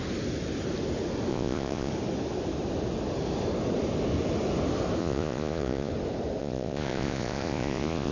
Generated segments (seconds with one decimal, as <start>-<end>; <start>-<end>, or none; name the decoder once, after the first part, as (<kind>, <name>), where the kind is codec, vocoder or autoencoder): 1.3-1.9 (vocoder, Vocos); 5.0-5.9; 6.4-8.1